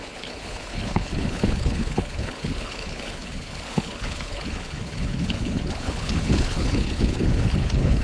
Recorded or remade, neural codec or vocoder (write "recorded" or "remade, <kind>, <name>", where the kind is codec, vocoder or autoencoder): remade, codec, HILCodec